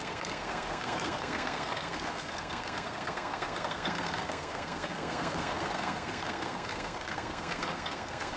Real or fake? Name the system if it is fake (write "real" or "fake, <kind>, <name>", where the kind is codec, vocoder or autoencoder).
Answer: fake, codec, SNAC